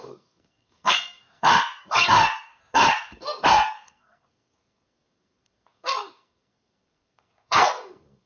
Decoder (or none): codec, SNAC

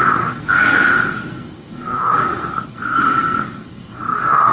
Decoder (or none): codec, SNAC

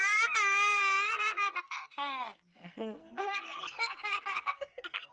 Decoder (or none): codec, SNAC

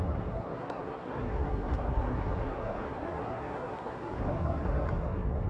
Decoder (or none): codec, SNAC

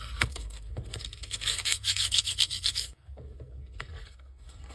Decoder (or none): codec, SNAC